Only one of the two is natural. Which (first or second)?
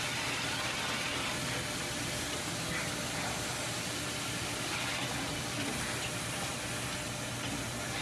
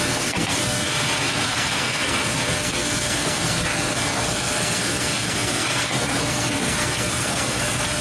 first